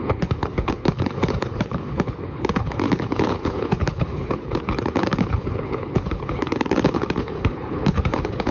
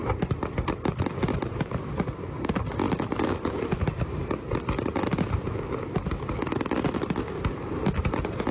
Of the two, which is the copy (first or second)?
first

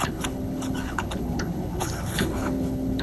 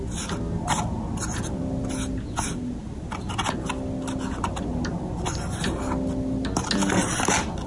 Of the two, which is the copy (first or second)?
first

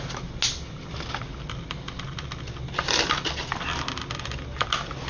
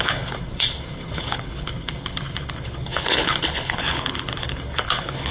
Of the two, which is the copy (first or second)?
second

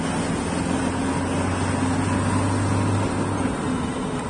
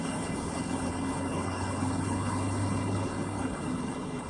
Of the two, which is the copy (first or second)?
second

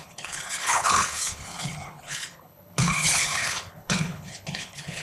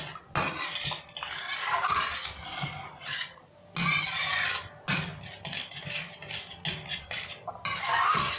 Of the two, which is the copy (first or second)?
first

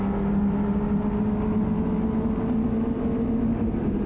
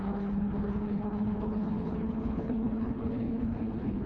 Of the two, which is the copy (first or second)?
second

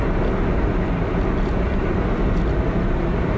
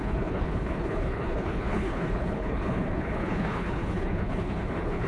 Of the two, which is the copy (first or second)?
second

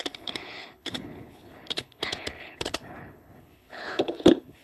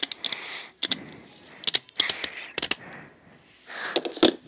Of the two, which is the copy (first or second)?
first